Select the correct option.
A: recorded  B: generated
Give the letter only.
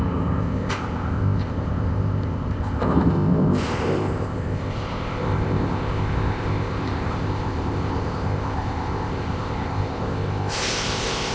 B